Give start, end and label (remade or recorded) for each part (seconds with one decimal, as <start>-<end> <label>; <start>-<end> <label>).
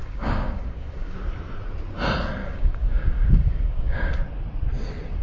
0.0-1.1 remade; 1.1-2.4 recorded; 2.4-4.1 remade; 4.1-5.2 recorded